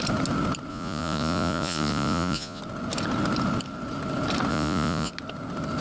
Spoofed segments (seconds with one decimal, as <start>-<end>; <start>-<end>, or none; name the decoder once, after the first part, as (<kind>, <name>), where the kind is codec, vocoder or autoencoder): 0.7-2.6 (vocoder, Vocos); 4.5-5.1